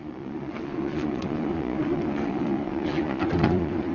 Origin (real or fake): fake